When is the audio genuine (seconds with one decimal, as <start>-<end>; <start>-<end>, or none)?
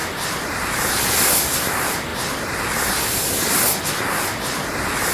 0.0-5.1